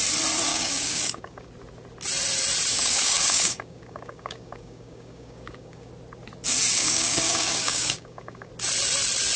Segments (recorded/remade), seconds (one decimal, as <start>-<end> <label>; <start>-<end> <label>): 0.0-0.5 recorded; 0.5-1.5 remade; 1.5-2.7 recorded; 2.7-5.9 remade; 5.9-6.8 recorded; 6.8-8.5 remade; 8.5-9.4 recorded